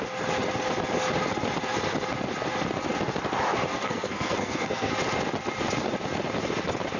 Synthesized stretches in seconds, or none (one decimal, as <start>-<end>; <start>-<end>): 3.7-4.9